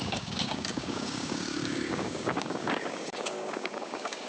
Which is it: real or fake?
fake